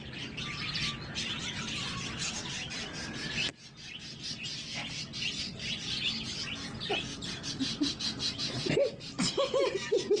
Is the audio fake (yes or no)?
no